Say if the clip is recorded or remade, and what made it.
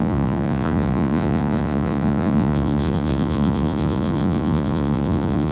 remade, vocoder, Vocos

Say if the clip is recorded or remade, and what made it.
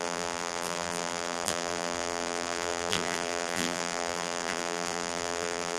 remade, vocoder, BigVGAN v2